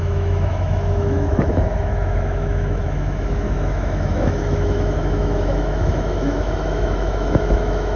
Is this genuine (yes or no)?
no